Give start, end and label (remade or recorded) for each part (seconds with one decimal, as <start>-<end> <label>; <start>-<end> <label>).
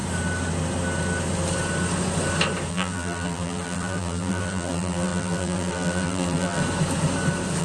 0.0-2.7 recorded; 2.7-6.6 remade; 6.6-7.6 recorded